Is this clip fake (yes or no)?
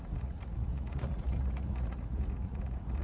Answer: yes